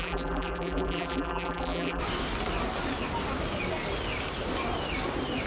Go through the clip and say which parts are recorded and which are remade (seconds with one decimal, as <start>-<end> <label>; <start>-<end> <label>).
0.0-2.0 remade; 2.0-5.5 recorded